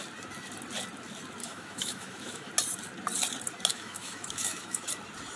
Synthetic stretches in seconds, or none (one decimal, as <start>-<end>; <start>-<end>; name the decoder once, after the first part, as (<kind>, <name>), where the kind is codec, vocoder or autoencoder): 1.4-2.5 (autoencoder, DAC-VAE); 3.7-4.9